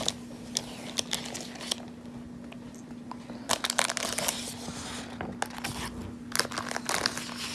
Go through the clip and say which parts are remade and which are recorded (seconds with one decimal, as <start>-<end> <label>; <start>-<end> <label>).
0.0-7.5 recorded